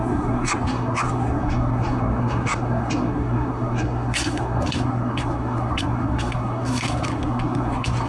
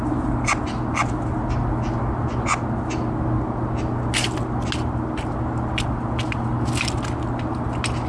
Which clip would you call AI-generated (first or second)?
first